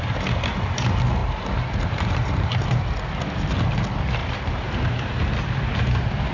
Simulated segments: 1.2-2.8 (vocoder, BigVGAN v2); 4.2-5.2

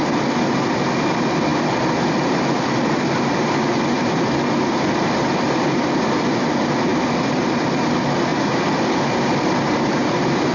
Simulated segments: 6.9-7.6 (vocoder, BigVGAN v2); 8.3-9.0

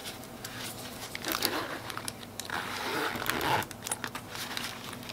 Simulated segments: 0.0-3.1 (vocoder, BigVGAN v2)

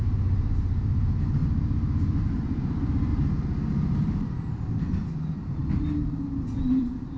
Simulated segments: 0.0-1.4 (vocoder, BigVGAN v2); 2.2-3.1; 3.7-5.6; 6.6-7.2